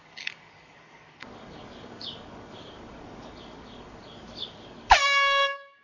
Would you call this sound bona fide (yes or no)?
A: no